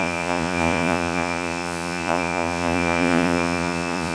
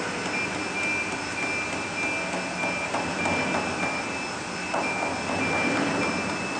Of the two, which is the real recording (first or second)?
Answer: second